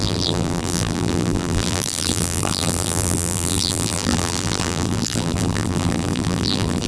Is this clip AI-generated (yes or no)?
yes